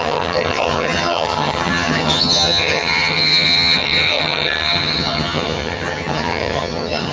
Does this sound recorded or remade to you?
remade